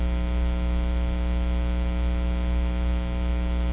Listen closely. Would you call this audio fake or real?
real